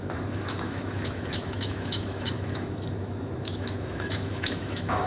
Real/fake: fake